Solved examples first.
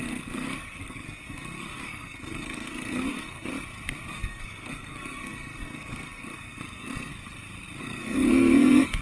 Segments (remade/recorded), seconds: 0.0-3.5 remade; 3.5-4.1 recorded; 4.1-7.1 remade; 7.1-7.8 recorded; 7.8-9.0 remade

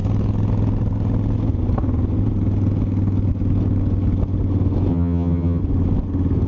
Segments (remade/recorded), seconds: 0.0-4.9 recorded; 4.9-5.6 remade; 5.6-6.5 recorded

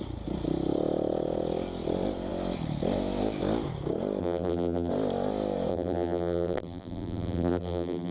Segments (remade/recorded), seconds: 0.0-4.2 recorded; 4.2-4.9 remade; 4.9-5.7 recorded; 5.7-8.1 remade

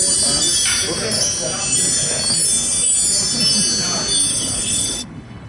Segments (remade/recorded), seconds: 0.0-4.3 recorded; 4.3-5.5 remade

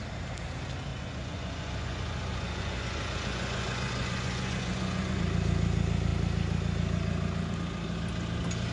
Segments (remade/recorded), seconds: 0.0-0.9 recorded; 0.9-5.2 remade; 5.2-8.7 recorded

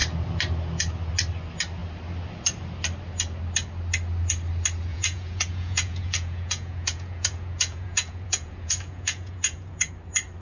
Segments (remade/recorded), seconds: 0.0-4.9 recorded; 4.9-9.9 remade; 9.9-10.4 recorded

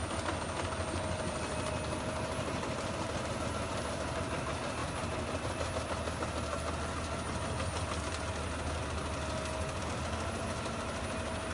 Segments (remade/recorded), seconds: 0.0-11.5 recorded